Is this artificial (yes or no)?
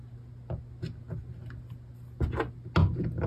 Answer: no